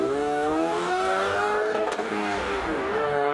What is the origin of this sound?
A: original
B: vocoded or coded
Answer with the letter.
B